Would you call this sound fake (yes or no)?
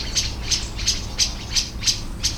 no